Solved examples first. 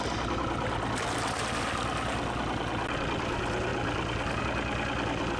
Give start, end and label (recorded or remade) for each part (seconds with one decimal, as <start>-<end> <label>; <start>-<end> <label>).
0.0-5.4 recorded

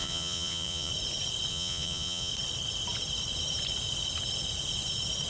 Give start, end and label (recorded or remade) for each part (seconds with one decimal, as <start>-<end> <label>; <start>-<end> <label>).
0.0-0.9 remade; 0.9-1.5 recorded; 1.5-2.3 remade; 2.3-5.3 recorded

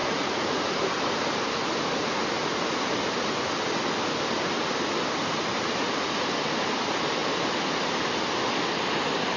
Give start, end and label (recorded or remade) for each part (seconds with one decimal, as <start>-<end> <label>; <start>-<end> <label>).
0.0-0.6 remade; 0.6-9.4 recorded

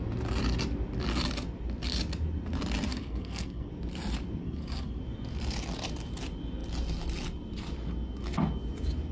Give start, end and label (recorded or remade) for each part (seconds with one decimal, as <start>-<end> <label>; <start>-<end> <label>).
0.0-2.9 recorded; 2.9-3.7 remade; 3.7-4.4 recorded; 4.4-5.0 remade; 5.0-9.1 recorded

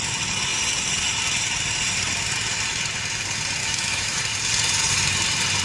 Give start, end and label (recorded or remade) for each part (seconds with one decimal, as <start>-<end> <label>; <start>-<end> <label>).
0.0-3.6 recorded; 3.6-4.2 remade; 4.2-5.6 recorded